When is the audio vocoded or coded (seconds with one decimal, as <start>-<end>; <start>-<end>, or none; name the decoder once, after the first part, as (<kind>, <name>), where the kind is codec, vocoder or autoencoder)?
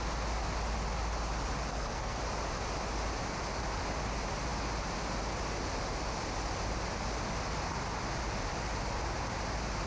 1.7-2.2 (codec, SNAC)